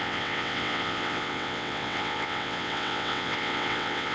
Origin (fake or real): fake